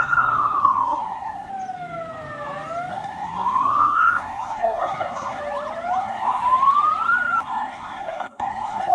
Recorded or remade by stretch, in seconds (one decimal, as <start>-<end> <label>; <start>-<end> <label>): 0.0-1.5 remade; 1.5-2.9 recorded; 2.9-5.4 remade; 5.4-6.0 recorded; 6.0-6.4 remade; 6.4-7.4 recorded; 7.4-8.9 remade